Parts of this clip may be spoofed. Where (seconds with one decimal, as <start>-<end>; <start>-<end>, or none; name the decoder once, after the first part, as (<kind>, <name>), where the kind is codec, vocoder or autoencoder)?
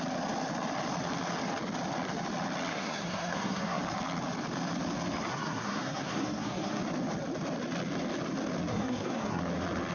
2.7-3.8 (codec, SNAC); 5.3-6.8; 8.7-9.4